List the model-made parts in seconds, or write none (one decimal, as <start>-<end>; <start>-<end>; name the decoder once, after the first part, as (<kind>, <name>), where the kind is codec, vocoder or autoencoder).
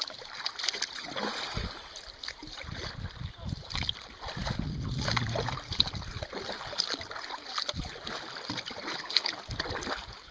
none